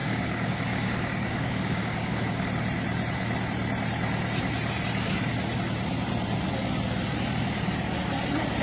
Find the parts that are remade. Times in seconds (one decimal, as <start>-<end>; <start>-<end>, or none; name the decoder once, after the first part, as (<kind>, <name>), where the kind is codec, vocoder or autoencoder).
0.0-2.4 (codec, DAC)